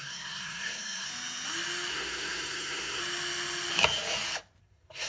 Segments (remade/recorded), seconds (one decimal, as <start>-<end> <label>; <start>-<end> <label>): 0.0-1.1 remade; 1.1-1.9 recorded; 1.9-3.0 remade; 3.0-4.6 recorded; 4.6-5.1 remade